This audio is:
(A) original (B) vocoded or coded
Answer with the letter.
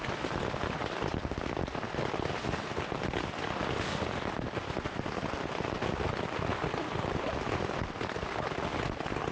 A